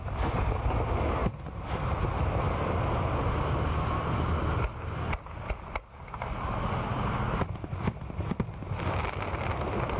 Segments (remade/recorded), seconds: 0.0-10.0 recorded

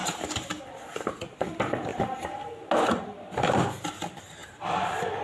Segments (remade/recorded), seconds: 0.0-0.8 remade; 0.8-1.9 recorded; 1.9-2.5 remade; 2.5-4.4 recorded; 4.4-5.2 remade

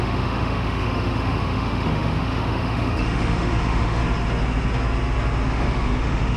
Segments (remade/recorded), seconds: 0.0-4.0 remade; 4.0-5.5 recorded; 5.5-6.4 remade

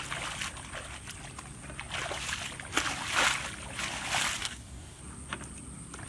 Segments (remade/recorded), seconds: 0.0-4.4 recorded; 4.4-5.0 remade; 5.0-6.1 recorded

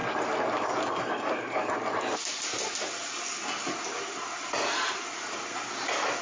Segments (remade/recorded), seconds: 0.0-6.2 recorded

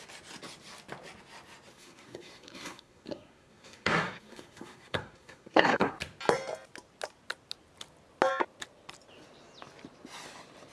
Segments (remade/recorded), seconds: 0.0-1.7 recorded; 1.7-5.9 remade; 5.9-10.7 recorded

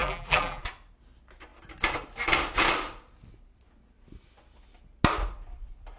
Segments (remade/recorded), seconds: 0.0-0.6 remade; 0.6-6.0 recorded